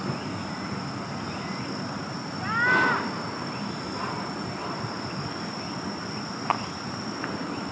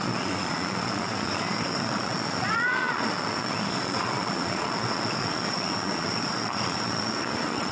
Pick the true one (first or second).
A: first